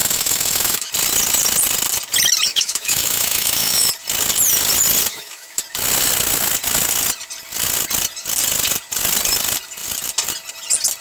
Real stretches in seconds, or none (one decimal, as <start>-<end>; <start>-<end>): 0.9-2.5; 3.9-5.1; 5.6-11.0